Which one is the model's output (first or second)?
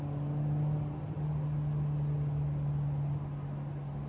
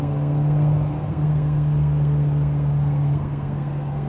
second